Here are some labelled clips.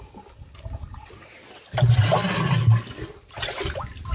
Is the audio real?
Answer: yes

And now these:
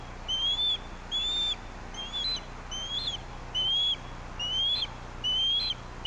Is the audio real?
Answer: yes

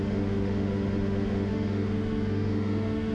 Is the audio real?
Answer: no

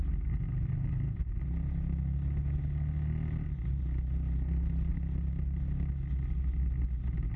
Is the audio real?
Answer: yes